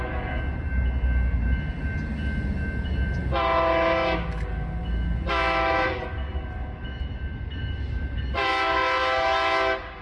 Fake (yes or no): no